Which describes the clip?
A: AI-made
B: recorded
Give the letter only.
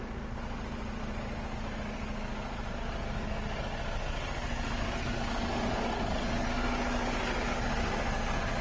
B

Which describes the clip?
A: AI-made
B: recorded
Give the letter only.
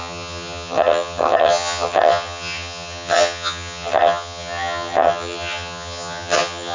A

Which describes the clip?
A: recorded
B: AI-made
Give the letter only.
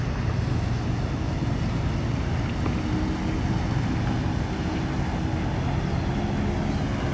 A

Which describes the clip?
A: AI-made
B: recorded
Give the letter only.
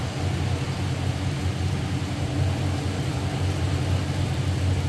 B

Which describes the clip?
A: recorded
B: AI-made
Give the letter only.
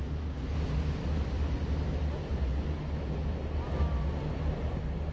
A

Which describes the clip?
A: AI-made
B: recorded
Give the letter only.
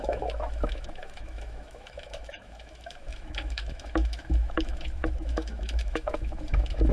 A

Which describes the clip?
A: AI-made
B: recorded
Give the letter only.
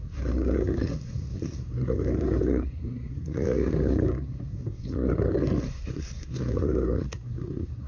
A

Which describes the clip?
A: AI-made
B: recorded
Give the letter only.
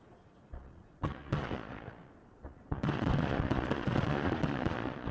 A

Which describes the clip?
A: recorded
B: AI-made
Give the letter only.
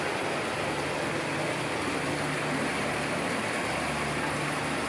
A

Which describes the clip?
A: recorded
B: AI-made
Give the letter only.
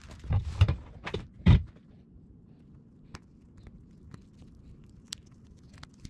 A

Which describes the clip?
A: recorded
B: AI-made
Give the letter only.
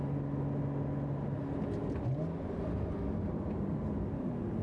A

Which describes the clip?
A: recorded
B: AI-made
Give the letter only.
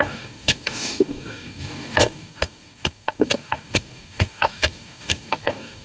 B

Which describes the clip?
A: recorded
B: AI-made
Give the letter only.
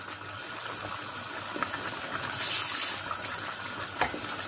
A